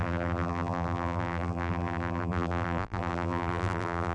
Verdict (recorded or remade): remade